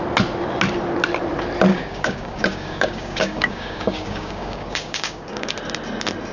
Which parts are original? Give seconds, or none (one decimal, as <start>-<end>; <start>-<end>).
0.0-1.7; 5.5-6.3